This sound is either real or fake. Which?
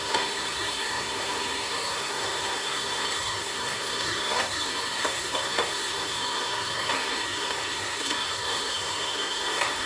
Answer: fake